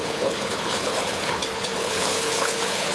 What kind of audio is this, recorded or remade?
remade